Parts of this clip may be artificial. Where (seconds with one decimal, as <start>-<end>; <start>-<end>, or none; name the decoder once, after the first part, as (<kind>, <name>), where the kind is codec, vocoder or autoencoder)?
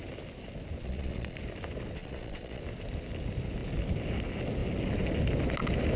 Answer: 0.8-1.4 (vocoder, Vocos); 2.0-2.6